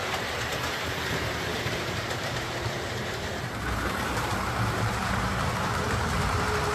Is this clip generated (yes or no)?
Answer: yes